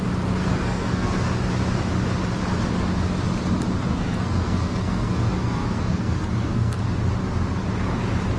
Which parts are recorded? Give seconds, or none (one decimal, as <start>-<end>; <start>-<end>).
0.0-0.4; 1.3-3.9; 6.8-8.4